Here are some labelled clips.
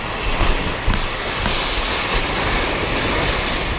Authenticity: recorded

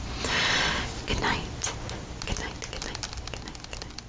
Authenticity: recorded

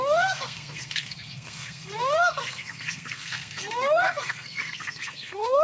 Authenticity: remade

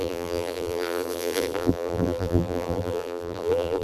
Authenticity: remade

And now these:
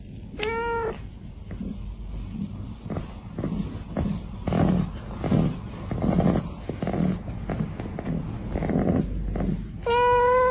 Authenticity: recorded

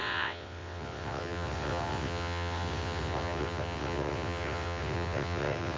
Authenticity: remade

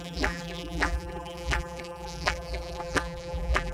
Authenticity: remade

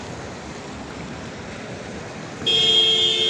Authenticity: recorded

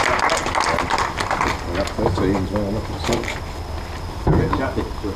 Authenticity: recorded